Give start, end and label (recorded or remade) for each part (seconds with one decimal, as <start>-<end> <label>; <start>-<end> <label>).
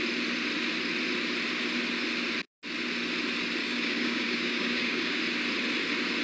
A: 0.0-3.6 recorded; 3.6-5.2 remade; 5.2-6.2 recorded